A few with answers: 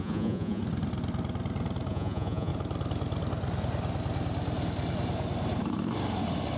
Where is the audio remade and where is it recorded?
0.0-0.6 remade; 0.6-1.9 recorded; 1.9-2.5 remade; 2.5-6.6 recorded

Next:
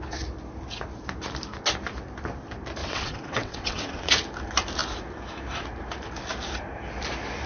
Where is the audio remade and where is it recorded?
0.0-2.8 recorded; 2.8-4.1 remade; 4.1-7.5 recorded

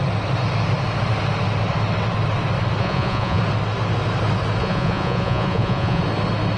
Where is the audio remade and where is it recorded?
0.0-2.8 recorded; 2.8-3.4 remade; 3.4-4.6 recorded; 4.6-6.0 remade; 6.0-6.6 recorded

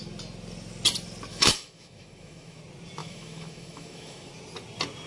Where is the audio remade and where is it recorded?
0.0-1.3 recorded; 1.3-2.6 remade; 2.6-3.0 recorded; 3.0-4.3 remade; 4.3-5.1 recorded

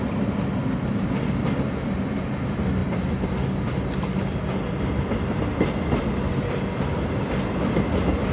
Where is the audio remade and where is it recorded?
0.0-8.3 recorded

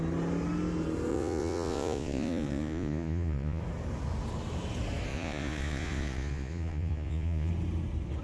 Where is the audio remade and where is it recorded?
0.0-1.1 recorded; 1.1-3.6 remade; 3.6-5.1 recorded; 5.1-7.5 remade; 7.5-8.2 recorded

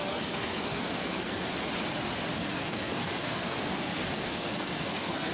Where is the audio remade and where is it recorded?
0.0-1.5 remade; 1.5-2.4 recorded; 2.4-5.3 remade

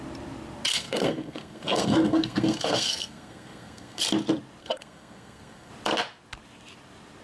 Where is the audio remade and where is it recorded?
0.0-0.7 recorded; 0.7-4.0 remade; 4.0-4.6 recorded; 4.6-5.7 remade; 5.7-7.2 recorded